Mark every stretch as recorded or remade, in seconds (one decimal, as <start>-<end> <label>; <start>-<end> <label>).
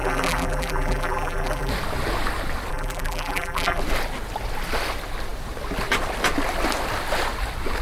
0.0-1.7 remade; 1.7-2.7 recorded; 2.7-3.8 remade; 3.8-7.8 recorded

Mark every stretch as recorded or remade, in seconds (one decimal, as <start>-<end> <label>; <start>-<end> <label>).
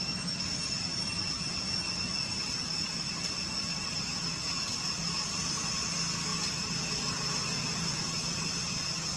0.0-9.2 recorded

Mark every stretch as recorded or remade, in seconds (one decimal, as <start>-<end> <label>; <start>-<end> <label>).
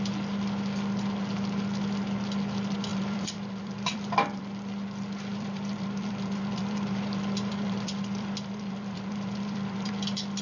0.0-2.9 recorded; 2.9-4.4 remade; 4.4-5.3 recorded; 5.3-9.9 remade; 9.9-10.4 recorded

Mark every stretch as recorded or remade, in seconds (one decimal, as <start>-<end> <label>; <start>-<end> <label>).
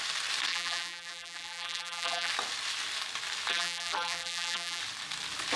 0.0-0.5 recorded; 0.5-2.3 remade; 2.3-3.5 recorded; 3.5-4.8 remade; 4.8-5.6 recorded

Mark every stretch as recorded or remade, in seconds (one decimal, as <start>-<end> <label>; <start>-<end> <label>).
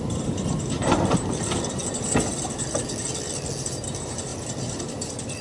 0.0-1.8 remade; 1.8-3.6 recorded; 3.6-4.3 remade; 4.3-4.8 recorded; 4.8-5.4 remade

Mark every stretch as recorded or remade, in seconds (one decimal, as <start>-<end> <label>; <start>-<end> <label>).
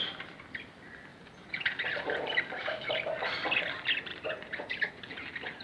0.0-1.1 recorded; 1.1-2.4 remade; 2.4-4.1 recorded; 4.1-4.9 remade; 4.9-5.6 recorded